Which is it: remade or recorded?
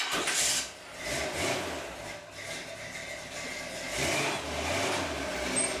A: recorded